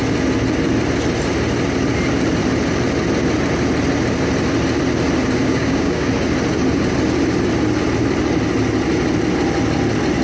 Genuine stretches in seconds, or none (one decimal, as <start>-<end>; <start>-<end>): 0.0-5.4; 6.1-10.2